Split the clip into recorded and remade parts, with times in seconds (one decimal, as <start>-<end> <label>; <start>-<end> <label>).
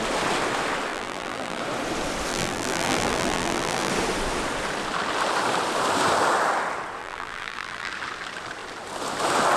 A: 0.0-0.9 recorded; 0.9-1.6 remade; 1.6-2.3 recorded; 2.3-3.9 remade; 3.9-7.0 recorded; 7.0-7.9 remade; 7.9-9.6 recorded